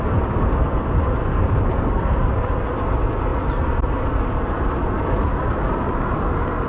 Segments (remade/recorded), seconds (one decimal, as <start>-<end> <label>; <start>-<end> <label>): 0.0-6.7 recorded